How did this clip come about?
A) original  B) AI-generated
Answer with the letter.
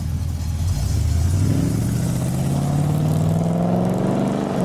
A